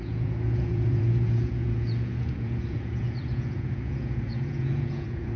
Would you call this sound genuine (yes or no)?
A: no